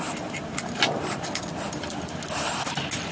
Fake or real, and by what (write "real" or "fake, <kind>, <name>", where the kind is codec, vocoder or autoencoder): real